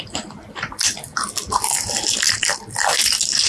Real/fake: real